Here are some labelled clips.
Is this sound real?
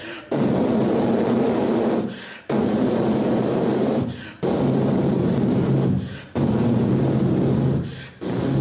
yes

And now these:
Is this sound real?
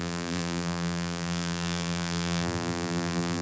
no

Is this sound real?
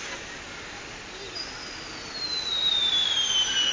yes